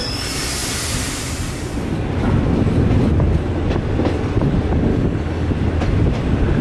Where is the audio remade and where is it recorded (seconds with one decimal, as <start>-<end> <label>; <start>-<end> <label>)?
0.0-4.9 recorded; 4.9-5.5 remade; 5.5-6.6 recorded